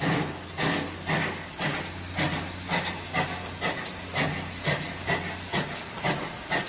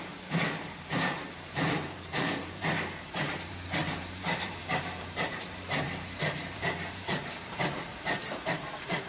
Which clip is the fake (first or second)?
second